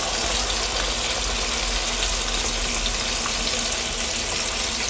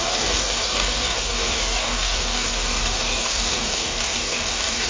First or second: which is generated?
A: second